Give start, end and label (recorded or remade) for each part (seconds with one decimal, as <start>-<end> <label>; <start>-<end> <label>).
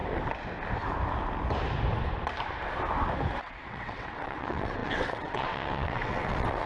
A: 0.0-3.4 recorded; 3.4-6.7 remade